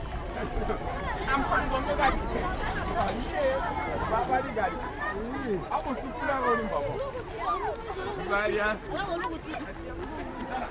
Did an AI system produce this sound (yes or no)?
no